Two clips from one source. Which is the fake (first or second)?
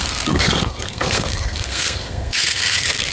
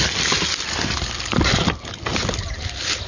first